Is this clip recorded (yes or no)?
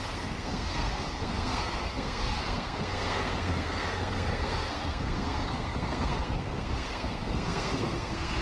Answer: no